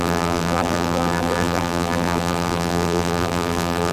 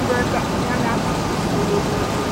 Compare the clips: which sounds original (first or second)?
second